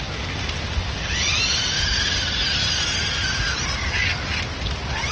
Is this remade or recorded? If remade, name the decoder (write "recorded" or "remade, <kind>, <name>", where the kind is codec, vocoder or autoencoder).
recorded